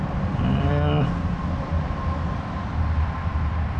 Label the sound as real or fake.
real